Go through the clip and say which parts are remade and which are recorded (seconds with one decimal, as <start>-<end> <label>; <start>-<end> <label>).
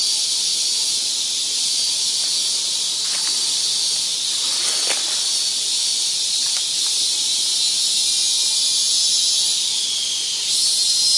0.0-11.2 recorded